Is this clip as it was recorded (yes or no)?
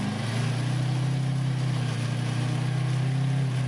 yes